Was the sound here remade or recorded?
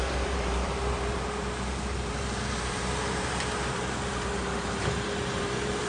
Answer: remade